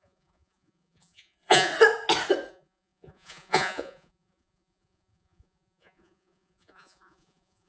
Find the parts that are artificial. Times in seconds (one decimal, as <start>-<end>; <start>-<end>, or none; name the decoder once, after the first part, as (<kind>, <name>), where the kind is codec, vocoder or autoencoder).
0.0-1.7 (vocoder, Vocos); 2.5-7.7